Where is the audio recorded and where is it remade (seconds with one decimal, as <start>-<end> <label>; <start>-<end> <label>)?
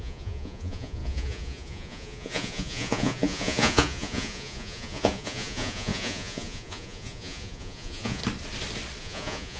0.0-8.2 remade; 8.2-9.0 recorded; 9.0-9.6 remade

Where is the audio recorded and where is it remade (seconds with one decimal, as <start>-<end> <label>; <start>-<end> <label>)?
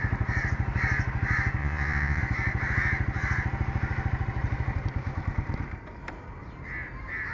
0.0-1.6 recorded; 1.6-2.2 remade; 2.2-7.3 recorded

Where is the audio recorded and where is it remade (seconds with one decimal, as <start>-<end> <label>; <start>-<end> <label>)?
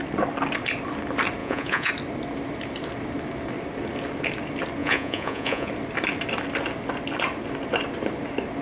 0.0-1.4 recorded; 1.4-1.9 remade; 1.9-4.8 recorded; 4.8-5.7 remade; 5.7-8.6 recorded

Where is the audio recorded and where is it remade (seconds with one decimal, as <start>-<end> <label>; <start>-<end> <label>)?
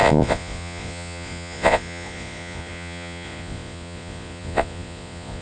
0.0-5.4 remade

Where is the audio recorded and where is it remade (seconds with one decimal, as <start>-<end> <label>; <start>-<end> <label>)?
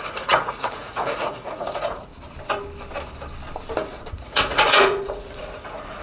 0.0-2.1 remade; 2.1-4.1 recorded; 4.1-6.0 remade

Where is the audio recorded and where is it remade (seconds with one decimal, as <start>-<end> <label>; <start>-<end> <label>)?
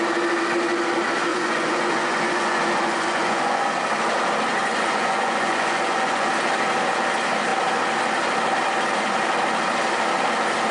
0.0-1.3 recorded; 1.3-3.7 remade; 3.7-4.6 recorded; 4.6-6.3 remade; 6.3-10.7 recorded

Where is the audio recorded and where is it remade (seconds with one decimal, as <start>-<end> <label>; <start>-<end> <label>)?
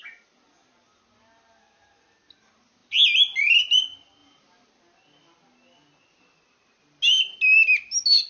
0.0-8.3 recorded